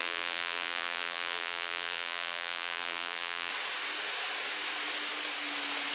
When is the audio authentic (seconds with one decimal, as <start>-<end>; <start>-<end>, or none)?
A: 3.5-5.9